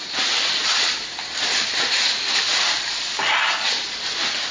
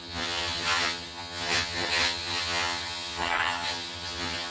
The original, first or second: first